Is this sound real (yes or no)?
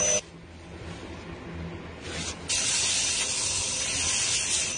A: yes